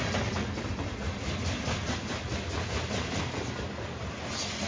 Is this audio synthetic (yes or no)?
no